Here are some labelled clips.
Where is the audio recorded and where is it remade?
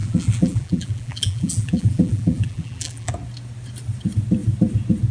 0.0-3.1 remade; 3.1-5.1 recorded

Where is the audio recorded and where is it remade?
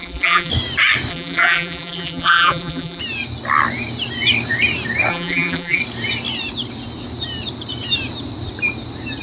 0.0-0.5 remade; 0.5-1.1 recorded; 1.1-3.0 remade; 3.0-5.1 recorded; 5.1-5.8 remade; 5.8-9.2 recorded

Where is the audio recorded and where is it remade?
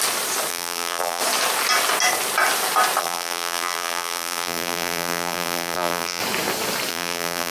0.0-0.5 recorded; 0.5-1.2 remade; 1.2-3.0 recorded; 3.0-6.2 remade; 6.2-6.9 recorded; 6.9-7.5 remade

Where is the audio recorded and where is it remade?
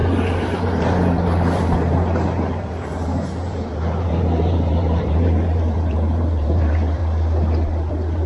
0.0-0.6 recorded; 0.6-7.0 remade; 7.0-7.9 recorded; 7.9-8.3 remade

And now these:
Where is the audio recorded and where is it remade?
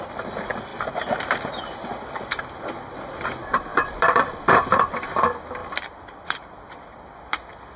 0.0-0.7 remade; 0.7-1.6 recorded; 1.6-7.8 remade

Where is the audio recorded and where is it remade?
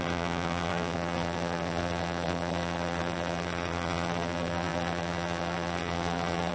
0.0-6.5 remade